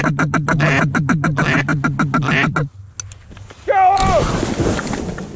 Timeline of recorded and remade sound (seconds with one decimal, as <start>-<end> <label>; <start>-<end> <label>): 0.0-5.4 recorded